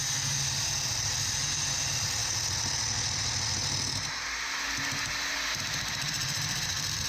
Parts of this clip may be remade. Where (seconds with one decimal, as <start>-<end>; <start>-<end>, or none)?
0.0-2.2; 5.6-7.1